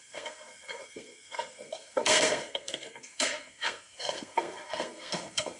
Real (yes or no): no